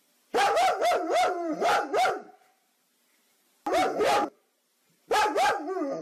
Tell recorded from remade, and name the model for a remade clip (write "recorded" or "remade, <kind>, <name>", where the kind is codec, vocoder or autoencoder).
recorded